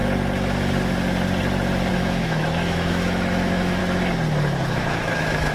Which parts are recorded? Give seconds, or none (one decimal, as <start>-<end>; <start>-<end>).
0.0-1.9; 3.8-4.7